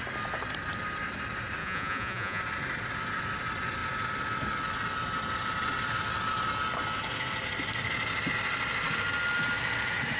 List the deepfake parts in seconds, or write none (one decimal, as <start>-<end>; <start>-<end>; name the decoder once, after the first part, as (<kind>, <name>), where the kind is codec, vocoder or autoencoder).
1.6-2.4 (vocoder, Vocos)